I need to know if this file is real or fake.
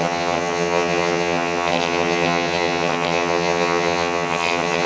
fake